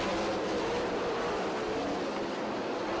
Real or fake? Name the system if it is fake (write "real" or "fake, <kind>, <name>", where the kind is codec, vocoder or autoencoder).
real